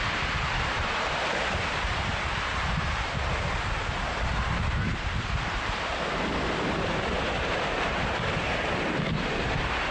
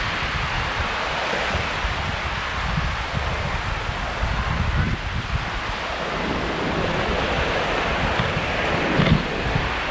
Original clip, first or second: second